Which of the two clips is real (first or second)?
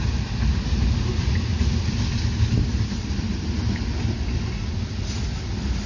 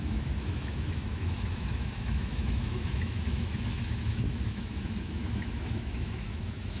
first